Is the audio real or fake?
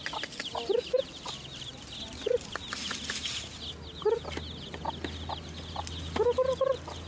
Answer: real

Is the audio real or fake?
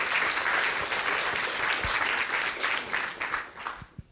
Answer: real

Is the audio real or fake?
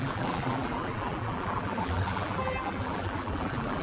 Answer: fake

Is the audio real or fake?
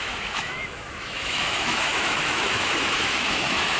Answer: fake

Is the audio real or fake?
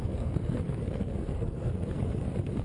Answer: fake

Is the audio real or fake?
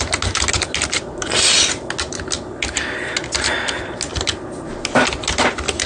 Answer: real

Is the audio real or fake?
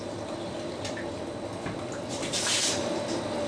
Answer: real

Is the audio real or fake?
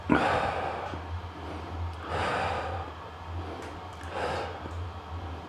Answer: real